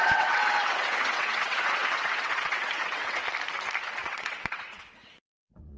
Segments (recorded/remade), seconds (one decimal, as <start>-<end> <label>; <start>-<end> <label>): 0.0-3.2 remade; 3.2-3.8 recorded; 3.8-5.8 remade